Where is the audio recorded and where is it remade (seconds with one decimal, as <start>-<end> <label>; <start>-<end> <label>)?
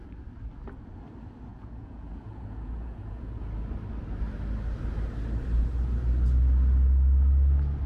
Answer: 0.0-1.5 recorded; 1.5-3.4 remade; 3.4-7.9 recorded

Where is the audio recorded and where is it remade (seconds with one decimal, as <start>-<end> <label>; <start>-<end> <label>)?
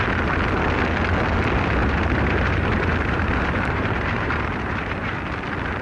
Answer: 0.0-1.8 recorded; 1.8-5.1 remade; 5.1-5.8 recorded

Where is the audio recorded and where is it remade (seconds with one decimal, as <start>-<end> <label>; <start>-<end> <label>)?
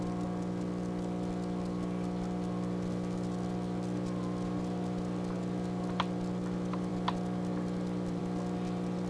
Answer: 0.0-9.1 recorded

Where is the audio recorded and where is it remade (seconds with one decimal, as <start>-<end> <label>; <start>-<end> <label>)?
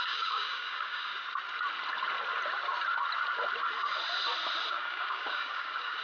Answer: 0.0-1.1 remade; 1.1-4.7 recorded; 4.7-6.0 remade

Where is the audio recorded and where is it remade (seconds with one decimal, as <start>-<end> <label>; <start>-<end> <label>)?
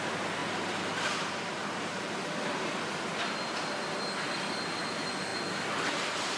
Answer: 0.0-0.4 recorded; 0.4-2.7 remade; 2.7-6.4 recorded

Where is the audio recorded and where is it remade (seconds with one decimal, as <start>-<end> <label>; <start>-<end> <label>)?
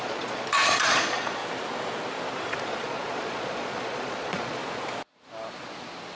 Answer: 0.0-1.4 remade; 1.4-2.6 recorded; 2.6-4.6 remade; 4.6-6.2 recorded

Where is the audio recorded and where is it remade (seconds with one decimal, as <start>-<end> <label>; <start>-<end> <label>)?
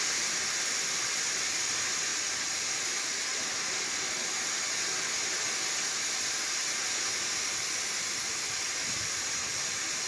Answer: 0.0-10.1 recorded